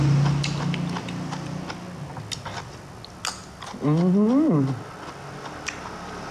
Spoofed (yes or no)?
no